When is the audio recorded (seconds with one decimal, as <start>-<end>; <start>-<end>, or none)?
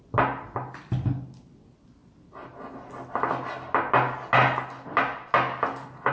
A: 0.0-6.1